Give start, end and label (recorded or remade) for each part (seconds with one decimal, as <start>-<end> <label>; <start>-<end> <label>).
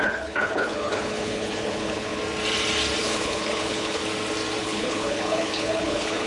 0.0-2.2 remade; 2.2-3.0 recorded; 3.0-4.0 remade; 4.0-4.6 recorded; 4.6-6.3 remade